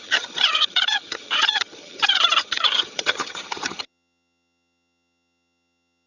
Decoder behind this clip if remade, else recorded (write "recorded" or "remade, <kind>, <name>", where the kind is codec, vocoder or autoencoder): remade, vocoder, HiFi-GAN